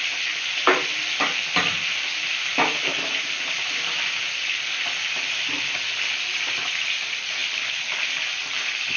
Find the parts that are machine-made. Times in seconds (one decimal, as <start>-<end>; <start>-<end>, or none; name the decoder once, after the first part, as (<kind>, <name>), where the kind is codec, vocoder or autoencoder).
none